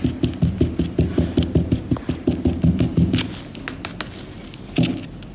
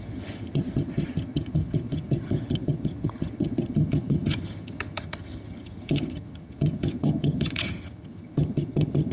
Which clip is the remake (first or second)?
second